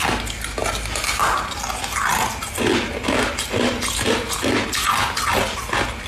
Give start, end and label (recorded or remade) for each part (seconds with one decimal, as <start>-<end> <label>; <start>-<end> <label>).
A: 0.0-6.1 recorded